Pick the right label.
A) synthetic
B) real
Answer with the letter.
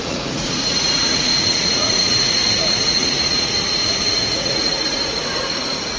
A